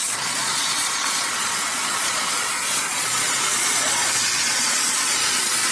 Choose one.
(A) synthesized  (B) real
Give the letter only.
A